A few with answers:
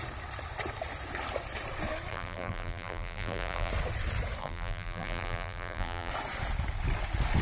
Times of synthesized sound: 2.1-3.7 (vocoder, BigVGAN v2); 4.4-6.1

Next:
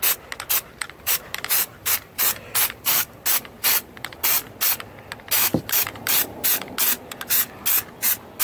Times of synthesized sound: 0.8-3.2 (vocoder, BigVGAN v2); 3.6-4.5; 5.4-6.7

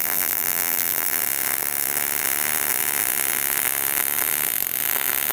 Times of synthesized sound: 0.0-1.2 (vocoder, BigVGAN v2)